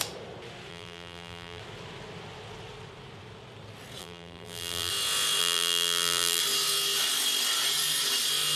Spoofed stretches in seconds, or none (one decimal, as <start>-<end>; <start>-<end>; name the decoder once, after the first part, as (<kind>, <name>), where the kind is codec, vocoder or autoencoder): 0.7-1.6 (vocoder, BigVGAN v2); 4.0-4.9; 5.4-6.4